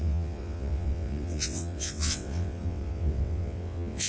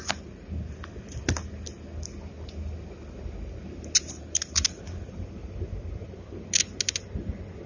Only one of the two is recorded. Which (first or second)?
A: second